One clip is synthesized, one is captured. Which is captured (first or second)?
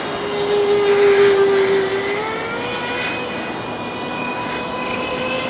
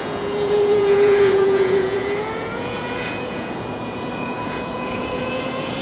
first